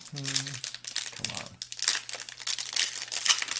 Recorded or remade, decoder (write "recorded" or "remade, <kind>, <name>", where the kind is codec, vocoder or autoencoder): recorded